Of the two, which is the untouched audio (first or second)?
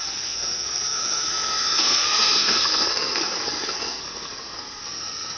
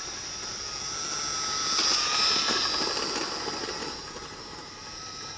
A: second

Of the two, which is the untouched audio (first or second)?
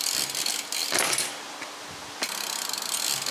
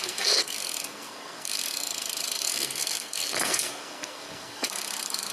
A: first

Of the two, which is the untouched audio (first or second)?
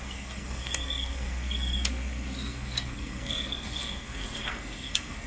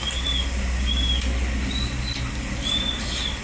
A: second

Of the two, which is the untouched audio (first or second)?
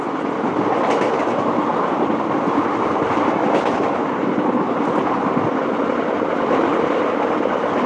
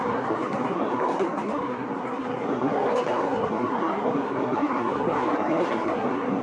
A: first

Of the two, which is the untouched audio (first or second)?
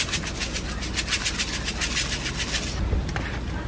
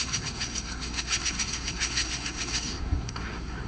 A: first